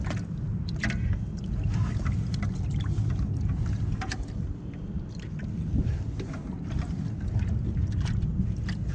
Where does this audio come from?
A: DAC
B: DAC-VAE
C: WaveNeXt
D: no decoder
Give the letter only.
D